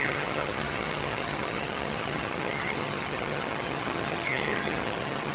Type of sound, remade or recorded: remade